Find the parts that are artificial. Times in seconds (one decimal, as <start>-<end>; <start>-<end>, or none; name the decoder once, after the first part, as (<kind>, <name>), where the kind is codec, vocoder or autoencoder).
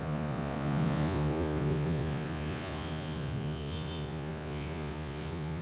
0.0-5.6 (vocoder, Vocos)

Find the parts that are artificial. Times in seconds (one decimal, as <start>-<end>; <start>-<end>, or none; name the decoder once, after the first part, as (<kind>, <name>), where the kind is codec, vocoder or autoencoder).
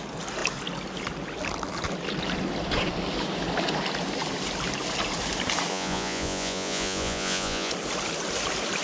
5.7-7.7 (vocoder, Vocos)